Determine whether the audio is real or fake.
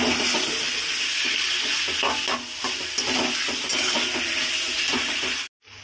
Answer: real